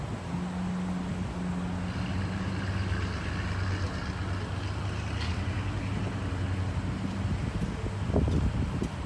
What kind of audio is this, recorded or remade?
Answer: recorded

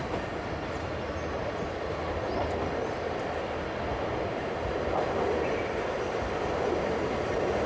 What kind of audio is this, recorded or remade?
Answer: recorded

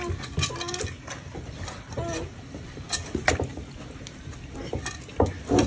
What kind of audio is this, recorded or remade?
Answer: recorded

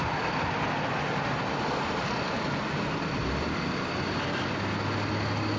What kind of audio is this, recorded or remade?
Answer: recorded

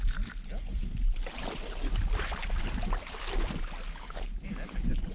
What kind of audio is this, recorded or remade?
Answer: recorded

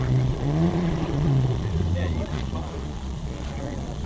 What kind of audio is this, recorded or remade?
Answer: remade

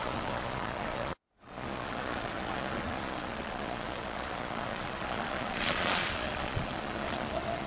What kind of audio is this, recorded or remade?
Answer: remade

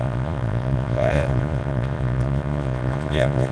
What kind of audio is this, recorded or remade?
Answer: remade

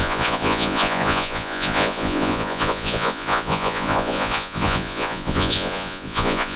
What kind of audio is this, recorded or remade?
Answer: remade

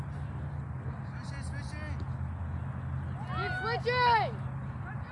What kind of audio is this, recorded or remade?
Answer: recorded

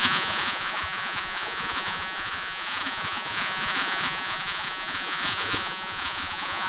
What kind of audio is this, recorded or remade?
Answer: remade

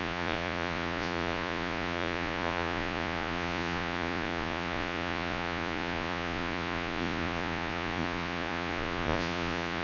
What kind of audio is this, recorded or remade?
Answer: remade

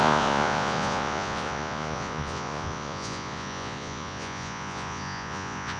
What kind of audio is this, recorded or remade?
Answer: remade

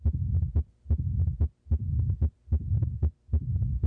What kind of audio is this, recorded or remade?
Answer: recorded